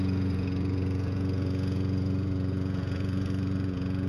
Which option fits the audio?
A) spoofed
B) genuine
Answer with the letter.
A